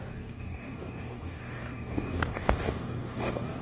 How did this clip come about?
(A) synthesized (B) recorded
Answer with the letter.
A